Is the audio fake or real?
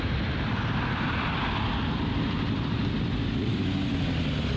real